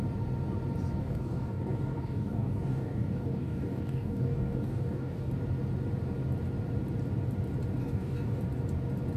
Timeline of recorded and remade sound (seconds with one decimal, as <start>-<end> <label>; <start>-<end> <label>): 0.0-1.0 recorded; 1.0-5.3 remade; 5.3-7.8 recorded; 7.8-8.4 remade; 8.4-9.2 recorded